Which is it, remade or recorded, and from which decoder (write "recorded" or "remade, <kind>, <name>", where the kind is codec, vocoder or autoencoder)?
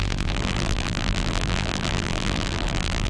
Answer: remade, vocoder, BigVGAN v2